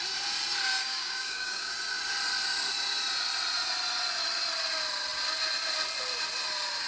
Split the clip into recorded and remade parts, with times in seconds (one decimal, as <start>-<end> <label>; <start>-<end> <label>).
0.0-0.8 recorded; 0.8-1.7 remade; 1.7-6.9 recorded